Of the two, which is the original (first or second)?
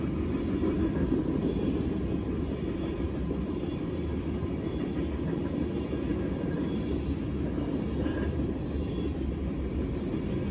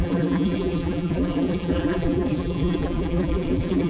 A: first